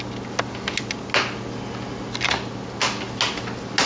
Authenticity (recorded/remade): recorded